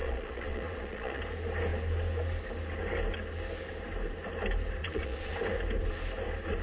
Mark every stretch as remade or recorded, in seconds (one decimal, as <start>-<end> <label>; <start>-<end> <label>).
0.0-1.2 remade; 1.2-4.8 recorded; 4.8-5.3 remade; 5.3-6.6 recorded